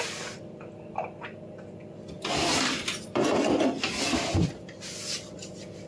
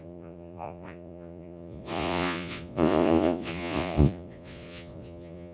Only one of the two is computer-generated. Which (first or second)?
second